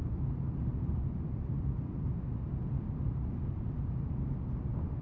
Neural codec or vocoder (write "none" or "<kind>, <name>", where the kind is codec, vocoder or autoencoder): none